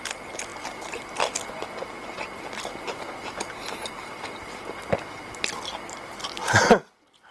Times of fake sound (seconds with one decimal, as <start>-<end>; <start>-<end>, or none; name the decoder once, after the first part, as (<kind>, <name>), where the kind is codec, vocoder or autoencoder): none